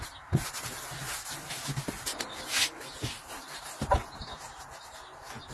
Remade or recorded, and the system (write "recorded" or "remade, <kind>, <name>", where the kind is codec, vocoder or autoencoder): recorded